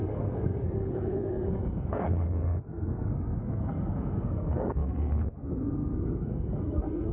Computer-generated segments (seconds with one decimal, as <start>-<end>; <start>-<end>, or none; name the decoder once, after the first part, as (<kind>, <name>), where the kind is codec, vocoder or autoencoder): 0.0-7.1 (codec, SNAC)